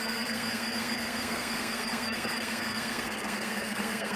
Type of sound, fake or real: fake